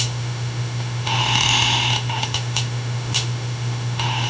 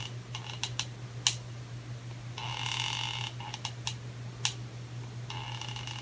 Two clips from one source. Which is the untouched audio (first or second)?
second